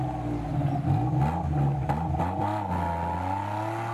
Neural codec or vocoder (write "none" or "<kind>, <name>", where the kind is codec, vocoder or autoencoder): none